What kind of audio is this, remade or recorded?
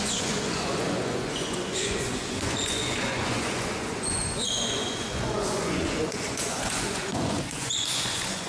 remade